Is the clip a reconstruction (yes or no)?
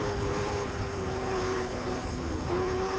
yes